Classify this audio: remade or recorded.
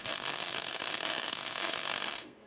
remade